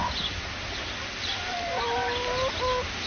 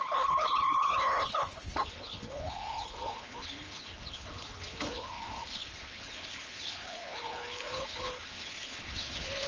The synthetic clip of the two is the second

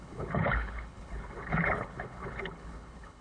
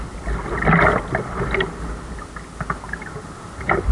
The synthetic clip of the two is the first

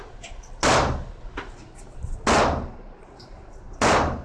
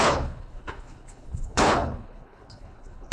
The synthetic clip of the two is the second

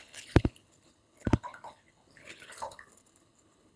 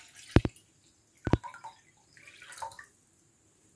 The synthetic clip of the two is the first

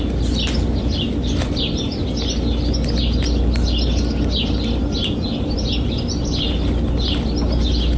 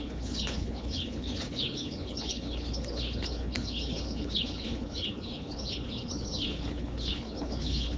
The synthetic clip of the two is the second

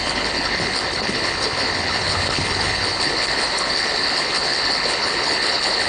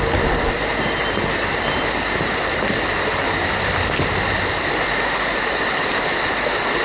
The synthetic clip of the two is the first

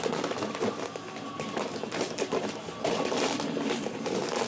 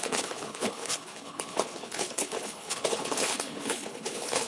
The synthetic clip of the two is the second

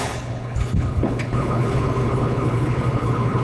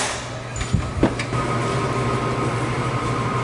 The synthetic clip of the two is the first